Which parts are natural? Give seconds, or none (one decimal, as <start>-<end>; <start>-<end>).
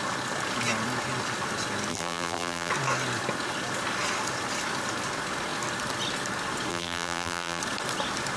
0.0-1.9; 2.7-6.7; 7.6-8.4